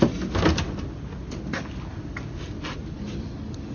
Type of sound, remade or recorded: recorded